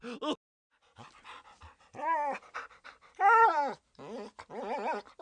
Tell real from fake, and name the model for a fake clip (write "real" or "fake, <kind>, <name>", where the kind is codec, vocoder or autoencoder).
real